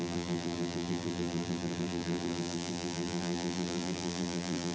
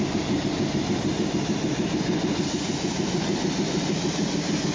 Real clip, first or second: second